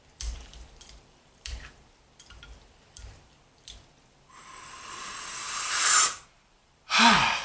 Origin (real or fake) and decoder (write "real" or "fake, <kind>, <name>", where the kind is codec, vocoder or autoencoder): fake, vocoder, BigVGAN v2